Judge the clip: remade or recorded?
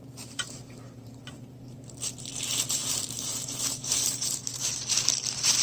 remade